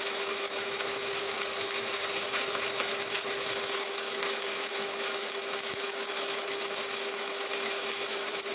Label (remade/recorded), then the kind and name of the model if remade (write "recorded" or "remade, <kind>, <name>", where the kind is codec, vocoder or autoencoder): remade, autoencoder, DAC-VAE